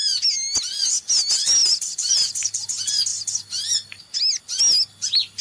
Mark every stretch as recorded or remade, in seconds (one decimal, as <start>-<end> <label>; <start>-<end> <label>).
0.0-1.6 recorded; 1.6-2.6 remade; 2.6-5.4 recorded

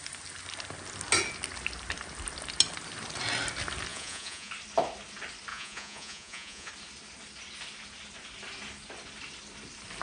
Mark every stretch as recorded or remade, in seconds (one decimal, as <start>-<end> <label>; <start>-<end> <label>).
0.0-3.9 recorded; 3.9-4.5 remade; 4.5-5.5 recorded; 5.5-6.7 remade; 6.7-10.0 recorded

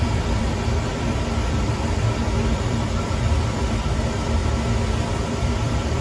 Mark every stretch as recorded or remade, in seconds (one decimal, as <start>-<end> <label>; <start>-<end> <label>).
0.0-4.4 remade; 4.4-5.0 recorded; 5.0-6.0 remade